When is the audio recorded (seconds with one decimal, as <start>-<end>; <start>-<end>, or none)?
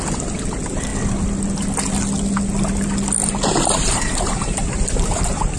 0.9-3.7